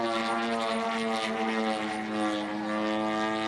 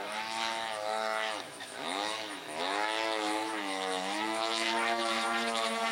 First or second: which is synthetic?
second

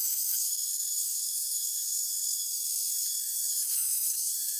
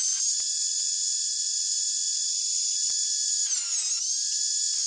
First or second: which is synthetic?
first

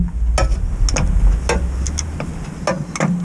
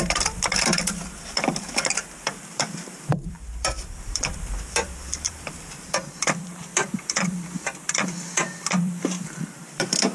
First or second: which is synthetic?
second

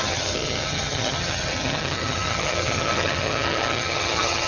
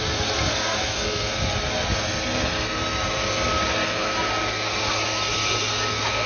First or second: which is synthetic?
first